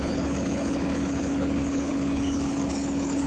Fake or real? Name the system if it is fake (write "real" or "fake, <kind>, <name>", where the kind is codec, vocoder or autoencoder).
fake, codec, HILCodec